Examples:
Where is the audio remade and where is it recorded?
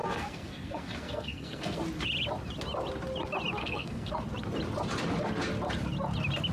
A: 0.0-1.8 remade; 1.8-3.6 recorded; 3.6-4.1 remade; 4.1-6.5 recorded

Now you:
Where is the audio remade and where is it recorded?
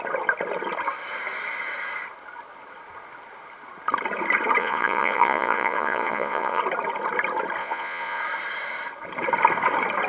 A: 0.0-4.6 recorded; 4.6-6.6 remade; 6.6-7.6 recorded; 7.6-8.2 remade; 8.2-10.1 recorded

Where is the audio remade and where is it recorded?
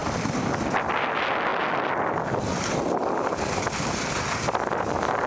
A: 0.0-5.3 recorded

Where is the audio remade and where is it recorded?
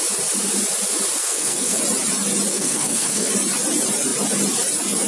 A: 0.0-1.2 recorded; 1.2-1.8 remade; 1.8-2.5 recorded; 2.5-3.3 remade; 3.3-5.1 recorded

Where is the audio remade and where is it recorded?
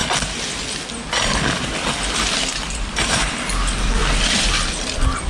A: 0.0-5.3 recorded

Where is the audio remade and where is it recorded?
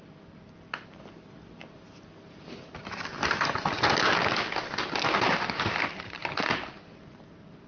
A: 0.0-7.7 recorded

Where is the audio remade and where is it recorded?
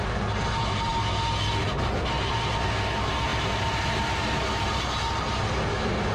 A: 0.0-6.1 recorded